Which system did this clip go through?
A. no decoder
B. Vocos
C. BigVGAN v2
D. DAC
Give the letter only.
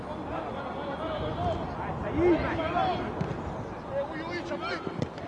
A